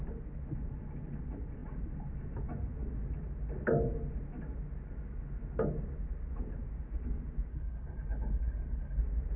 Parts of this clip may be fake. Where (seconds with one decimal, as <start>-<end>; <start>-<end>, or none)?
7.5-9.0